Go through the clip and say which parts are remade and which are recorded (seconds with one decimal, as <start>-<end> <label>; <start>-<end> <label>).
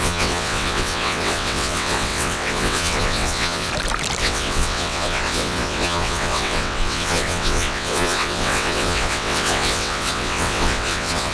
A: 0.0-3.7 remade; 3.7-4.2 recorded; 4.2-11.3 remade